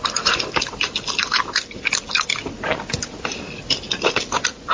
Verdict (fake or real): real